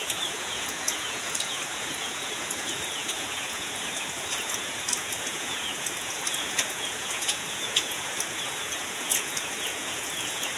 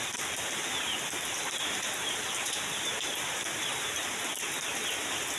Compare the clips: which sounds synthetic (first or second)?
first